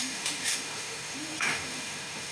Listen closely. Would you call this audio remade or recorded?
remade